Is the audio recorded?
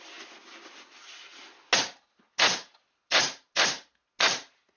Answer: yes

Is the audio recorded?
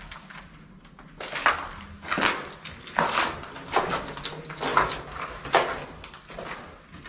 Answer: yes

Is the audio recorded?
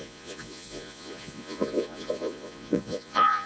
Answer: no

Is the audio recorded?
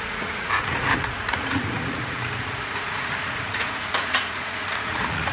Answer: no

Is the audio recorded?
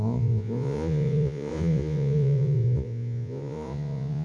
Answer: no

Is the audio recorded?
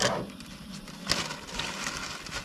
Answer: yes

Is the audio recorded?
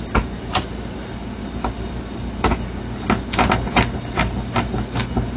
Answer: yes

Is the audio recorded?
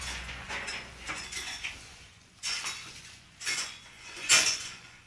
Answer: no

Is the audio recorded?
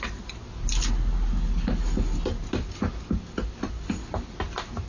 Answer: yes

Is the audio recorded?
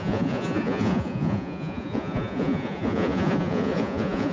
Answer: no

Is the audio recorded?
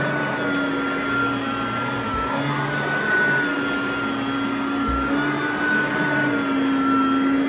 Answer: yes